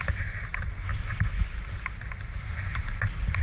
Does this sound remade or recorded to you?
recorded